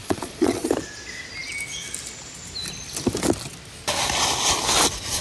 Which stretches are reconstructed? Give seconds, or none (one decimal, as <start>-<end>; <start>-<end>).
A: 0.0-0.7